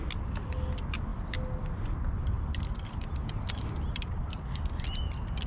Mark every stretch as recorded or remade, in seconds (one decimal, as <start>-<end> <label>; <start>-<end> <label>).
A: 0.0-5.5 recorded